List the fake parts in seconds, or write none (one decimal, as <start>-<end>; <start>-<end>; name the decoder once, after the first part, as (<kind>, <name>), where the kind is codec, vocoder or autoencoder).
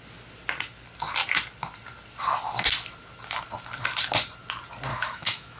4.9-5.6 (autoencoder, DAC-VAE)